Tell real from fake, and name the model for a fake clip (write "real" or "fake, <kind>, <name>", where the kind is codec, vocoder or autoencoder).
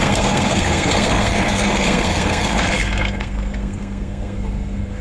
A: fake, codec, SNAC